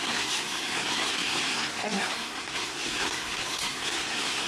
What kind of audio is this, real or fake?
fake